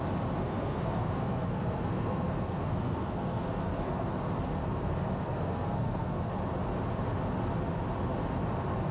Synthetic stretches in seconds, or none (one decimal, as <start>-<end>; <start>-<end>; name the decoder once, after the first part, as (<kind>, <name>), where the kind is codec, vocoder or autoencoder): 0.4-4.1 (codec, SNAC); 4.6-6.3